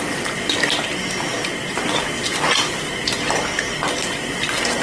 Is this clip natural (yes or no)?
no